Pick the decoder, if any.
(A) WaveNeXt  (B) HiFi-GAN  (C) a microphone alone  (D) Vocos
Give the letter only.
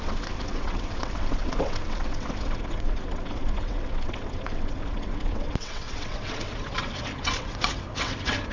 A